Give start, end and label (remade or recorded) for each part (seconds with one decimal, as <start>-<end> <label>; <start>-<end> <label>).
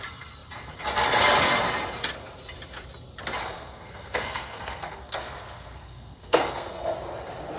0.0-3.4 recorded; 3.4-6.7 remade; 6.7-7.6 recorded